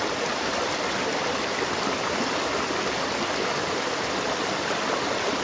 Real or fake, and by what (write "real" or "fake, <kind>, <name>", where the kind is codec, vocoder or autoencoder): real